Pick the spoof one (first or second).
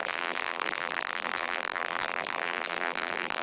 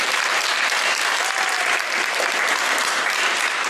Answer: first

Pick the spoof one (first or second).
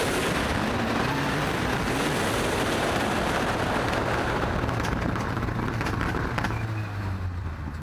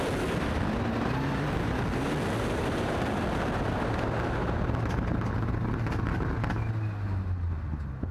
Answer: first